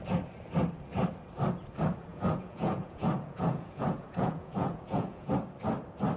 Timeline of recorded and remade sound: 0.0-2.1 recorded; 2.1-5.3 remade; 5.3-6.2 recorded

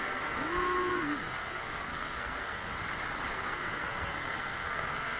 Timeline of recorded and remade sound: 0.0-2.7 remade; 2.7-3.3 recorded; 3.3-5.2 remade

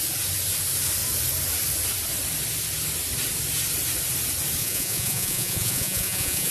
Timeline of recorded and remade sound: 0.0-4.6 recorded; 4.6-6.5 remade

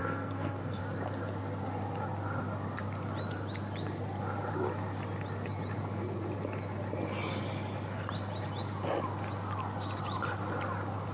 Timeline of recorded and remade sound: 0.0-0.8 remade; 0.8-11.1 recorded

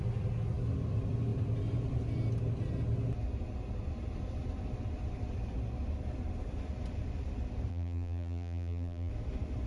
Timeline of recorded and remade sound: 0.0-7.7 recorded; 7.7-9.1 remade; 9.1-9.7 recorded

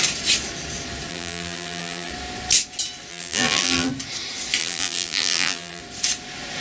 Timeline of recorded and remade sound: 0.0-1.1 recorded; 1.1-2.1 remade; 2.1-3.1 recorded; 3.1-3.9 remade; 3.9-4.6 recorded; 4.6-5.8 remade; 5.8-6.6 recorded

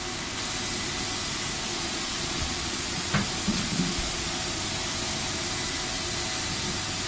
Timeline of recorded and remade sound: 0.0-1.7 recorded; 1.7-3.1 remade; 3.1-3.5 recorded; 3.5-4.4 remade; 4.4-7.1 recorded